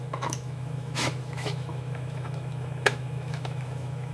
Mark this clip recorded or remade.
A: remade